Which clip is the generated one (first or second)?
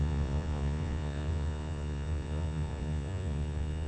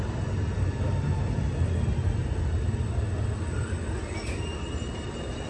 first